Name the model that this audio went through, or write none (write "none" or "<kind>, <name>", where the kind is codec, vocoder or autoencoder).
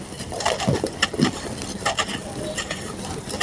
vocoder, BigVGAN v2